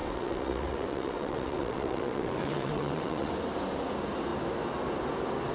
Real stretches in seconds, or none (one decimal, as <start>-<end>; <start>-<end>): 3.3-5.5